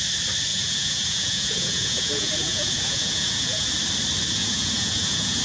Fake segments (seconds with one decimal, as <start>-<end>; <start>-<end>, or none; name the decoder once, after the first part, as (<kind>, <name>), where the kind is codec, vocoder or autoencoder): 0.5-3.7 (vocoder, Vocos); 4.4-5.4